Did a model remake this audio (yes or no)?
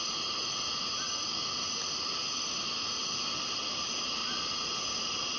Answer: no